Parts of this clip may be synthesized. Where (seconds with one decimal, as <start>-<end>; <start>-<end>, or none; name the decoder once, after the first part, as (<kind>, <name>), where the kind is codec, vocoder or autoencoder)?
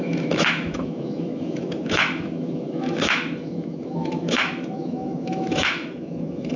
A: 0.0-6.6 (autoencoder, DAC-VAE)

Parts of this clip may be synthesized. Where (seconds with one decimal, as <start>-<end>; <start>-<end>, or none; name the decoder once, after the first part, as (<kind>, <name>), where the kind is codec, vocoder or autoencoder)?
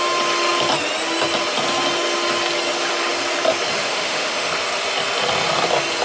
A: 3.8-4.5 (autoencoder, DAC-VAE)